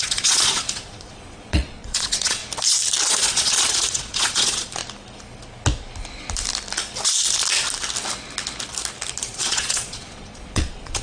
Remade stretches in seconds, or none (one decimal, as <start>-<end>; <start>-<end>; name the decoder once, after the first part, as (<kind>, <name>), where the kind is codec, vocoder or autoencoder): 0.0-2.4 (vocoder, Vocos); 3.1-4.8; 9.2-11.0